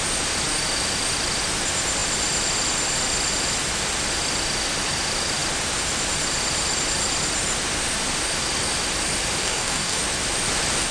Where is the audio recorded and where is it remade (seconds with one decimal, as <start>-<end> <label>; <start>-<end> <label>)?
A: 0.0-9.4 recorded; 9.4-10.0 remade; 10.0-10.9 recorded